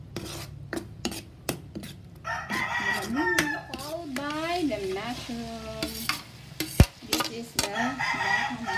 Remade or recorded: recorded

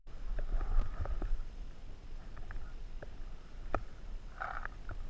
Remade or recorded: recorded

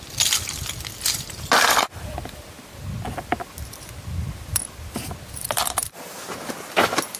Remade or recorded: recorded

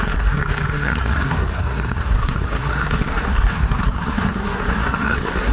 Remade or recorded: remade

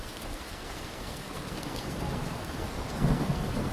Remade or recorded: remade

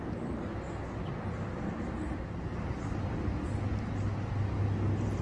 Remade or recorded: recorded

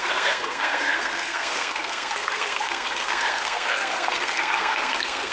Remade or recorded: remade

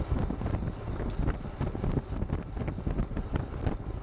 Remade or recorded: recorded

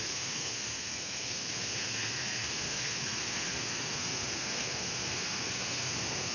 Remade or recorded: remade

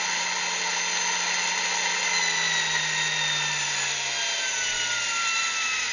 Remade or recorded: recorded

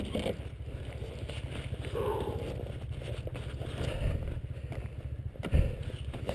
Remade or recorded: recorded